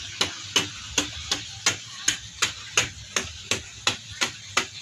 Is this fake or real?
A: real